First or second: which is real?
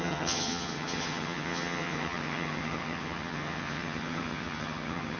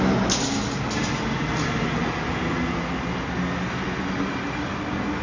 second